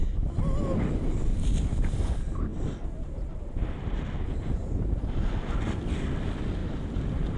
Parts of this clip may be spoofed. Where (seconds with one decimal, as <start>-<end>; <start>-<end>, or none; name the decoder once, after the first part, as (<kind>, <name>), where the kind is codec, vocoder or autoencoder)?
2.5-4.0 (vocoder, BigVGAN v2); 6.6-7.4